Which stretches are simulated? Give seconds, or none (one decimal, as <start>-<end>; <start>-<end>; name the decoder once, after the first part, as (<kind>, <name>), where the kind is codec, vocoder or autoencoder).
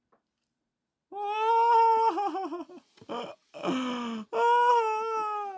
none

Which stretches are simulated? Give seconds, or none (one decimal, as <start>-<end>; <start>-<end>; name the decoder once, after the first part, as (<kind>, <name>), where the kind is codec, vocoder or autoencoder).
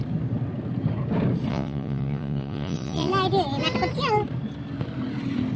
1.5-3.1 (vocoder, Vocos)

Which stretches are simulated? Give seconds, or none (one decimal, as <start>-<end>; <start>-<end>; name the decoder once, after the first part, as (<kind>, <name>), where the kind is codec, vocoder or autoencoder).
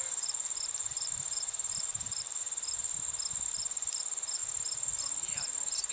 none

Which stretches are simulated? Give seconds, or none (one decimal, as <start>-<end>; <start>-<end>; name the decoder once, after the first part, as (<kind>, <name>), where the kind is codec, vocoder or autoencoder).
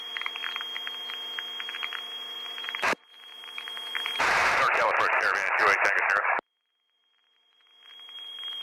0.0-0.4 (vocoder, BigVGAN v2); 1.6-5.6; 6.3-8.6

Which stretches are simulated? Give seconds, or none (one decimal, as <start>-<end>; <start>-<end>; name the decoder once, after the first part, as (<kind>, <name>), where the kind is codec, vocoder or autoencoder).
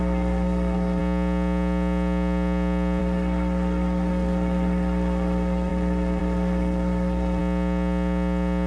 0.0-1.0 (codec, SNAC); 3.0-7.4